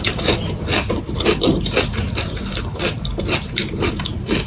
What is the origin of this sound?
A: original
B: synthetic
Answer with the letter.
B